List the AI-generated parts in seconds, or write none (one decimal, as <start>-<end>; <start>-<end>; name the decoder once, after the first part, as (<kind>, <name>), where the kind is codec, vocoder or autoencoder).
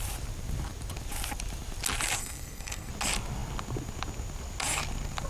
2.2-2.9 (codec, SNAC)